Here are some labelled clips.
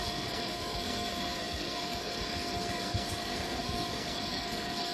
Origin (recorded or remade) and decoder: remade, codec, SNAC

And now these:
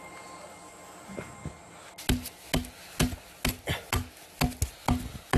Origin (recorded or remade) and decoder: recorded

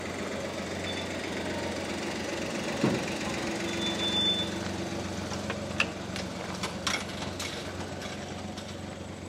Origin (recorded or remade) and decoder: recorded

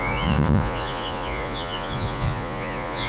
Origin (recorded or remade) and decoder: remade, vocoder, Vocos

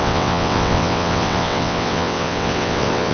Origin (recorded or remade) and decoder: remade, vocoder, WaveNeXt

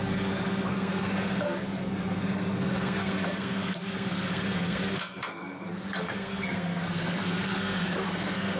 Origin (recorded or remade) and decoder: remade, codec, SNAC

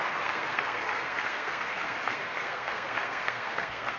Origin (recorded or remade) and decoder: remade, codec, SNAC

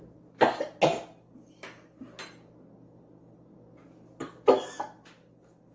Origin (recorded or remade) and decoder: recorded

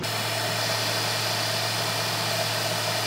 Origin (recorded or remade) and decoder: recorded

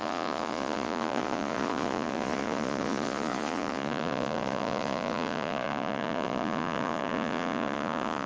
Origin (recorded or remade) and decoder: remade, vocoder, Vocos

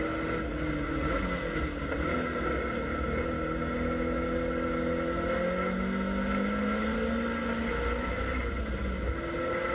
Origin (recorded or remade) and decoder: recorded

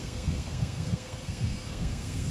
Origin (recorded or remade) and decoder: remade, codec, SNAC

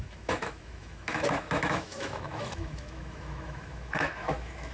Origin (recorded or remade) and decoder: remade, autoencoder, DAC-VAE